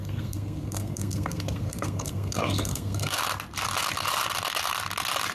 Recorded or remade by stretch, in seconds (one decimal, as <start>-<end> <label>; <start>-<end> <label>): 0.0-3.2 remade; 3.2-5.3 recorded